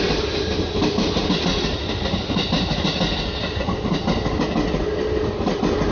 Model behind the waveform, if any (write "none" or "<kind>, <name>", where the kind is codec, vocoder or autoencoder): none